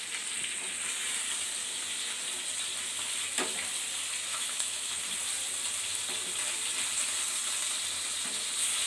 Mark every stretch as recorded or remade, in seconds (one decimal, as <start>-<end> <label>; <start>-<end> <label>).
0.0-4.3 recorded; 4.3-5.0 remade; 5.0-8.9 recorded